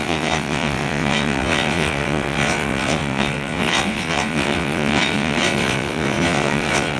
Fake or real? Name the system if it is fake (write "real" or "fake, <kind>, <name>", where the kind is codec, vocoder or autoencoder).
fake, vocoder, WaveNeXt